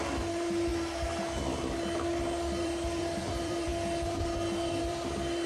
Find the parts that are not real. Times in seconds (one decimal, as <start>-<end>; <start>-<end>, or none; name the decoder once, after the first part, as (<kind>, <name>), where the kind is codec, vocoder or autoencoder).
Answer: 0.0-0.7 (vocoder, BigVGAN v2); 2.6-3.7; 4.8-5.5